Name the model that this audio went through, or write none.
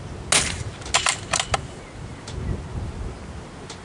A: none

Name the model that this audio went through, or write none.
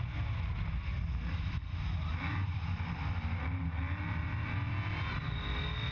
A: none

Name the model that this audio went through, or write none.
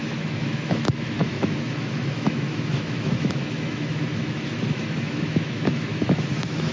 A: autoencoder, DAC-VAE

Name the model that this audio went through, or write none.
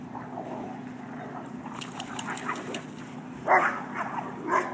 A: none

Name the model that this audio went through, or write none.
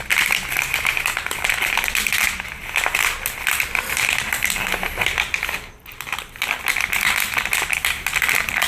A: none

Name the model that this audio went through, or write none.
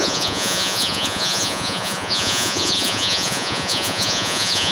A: vocoder, Vocos